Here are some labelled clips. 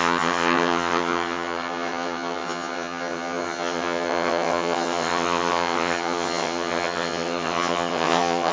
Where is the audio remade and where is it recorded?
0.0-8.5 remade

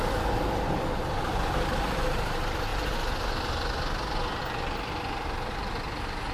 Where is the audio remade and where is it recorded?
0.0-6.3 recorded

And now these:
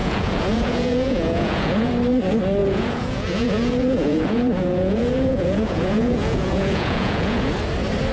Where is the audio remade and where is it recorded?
0.0-1.9 remade; 1.9-2.6 recorded; 2.6-7.5 remade; 7.5-8.1 recorded

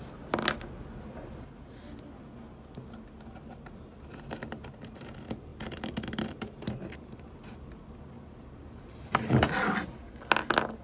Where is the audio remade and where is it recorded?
0.0-10.8 recorded

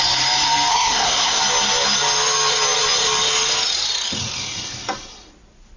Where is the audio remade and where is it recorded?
0.0-0.7 recorded; 0.7-1.4 remade; 1.4-5.8 recorded

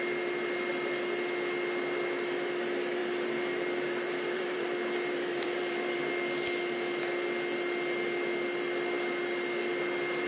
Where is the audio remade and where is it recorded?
0.0-3.0 recorded; 3.0-6.1 remade; 6.1-10.3 recorded

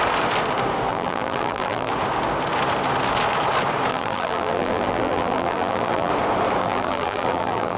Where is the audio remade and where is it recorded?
0.0-0.9 recorded; 0.9-1.9 remade; 1.9-3.9 recorded; 3.9-6.1 remade; 6.1-6.6 recorded; 6.6-7.8 remade

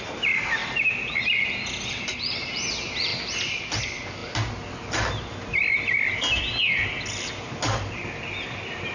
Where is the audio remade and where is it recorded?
0.0-8.9 recorded